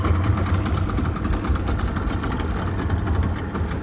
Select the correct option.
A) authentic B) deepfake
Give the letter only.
A